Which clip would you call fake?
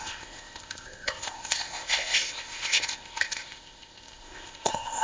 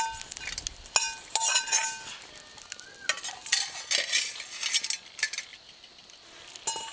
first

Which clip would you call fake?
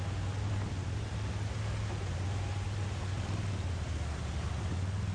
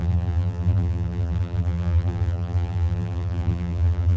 second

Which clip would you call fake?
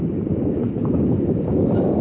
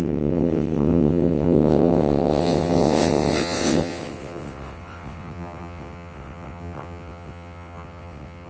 second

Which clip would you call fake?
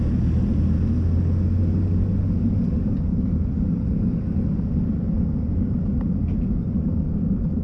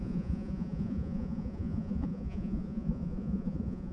second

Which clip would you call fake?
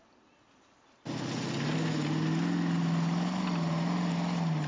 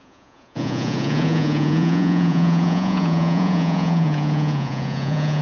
second